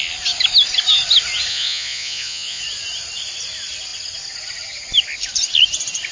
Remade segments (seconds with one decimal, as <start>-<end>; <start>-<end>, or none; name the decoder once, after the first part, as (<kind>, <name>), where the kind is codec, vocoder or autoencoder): 1.5-2.6 (vocoder, Vocos)